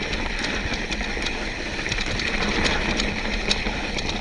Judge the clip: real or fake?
fake